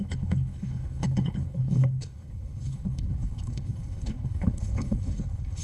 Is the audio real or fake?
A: fake